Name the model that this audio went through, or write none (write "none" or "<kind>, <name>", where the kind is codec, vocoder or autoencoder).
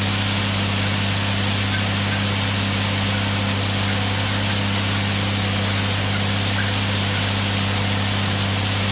none